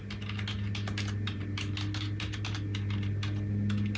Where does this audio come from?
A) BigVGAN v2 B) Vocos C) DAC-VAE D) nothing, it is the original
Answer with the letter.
D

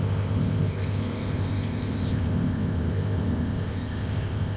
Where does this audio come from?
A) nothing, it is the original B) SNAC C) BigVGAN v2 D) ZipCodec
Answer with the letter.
D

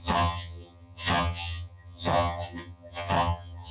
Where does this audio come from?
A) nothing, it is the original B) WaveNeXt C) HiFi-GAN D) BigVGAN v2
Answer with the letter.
C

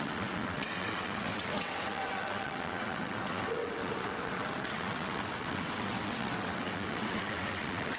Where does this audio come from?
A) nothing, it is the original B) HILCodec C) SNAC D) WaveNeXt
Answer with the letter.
D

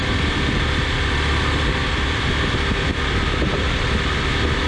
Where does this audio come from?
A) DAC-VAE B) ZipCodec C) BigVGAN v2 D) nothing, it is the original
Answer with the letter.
C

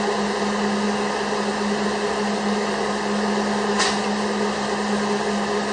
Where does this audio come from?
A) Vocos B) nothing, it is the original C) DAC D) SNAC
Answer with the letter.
B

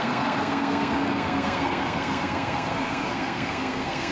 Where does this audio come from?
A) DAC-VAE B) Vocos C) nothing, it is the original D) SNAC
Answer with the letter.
D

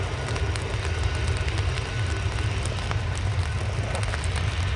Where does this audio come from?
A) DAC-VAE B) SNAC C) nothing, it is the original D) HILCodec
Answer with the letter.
C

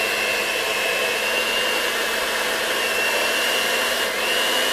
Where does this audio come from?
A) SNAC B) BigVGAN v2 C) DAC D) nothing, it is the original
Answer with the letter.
D